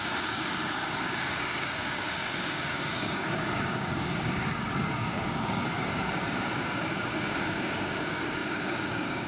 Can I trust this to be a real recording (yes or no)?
no